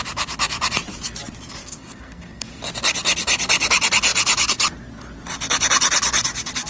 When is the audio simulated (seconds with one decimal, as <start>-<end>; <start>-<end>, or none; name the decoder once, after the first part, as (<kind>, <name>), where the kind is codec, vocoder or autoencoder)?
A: 1.6-2.7 (codec, SNAC)